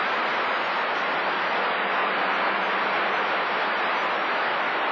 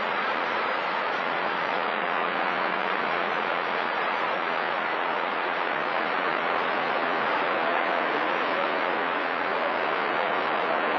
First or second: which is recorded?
first